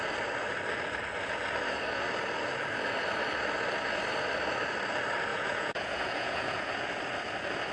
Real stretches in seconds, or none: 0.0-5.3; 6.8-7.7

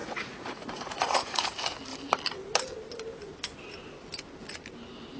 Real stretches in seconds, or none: 1.5-5.2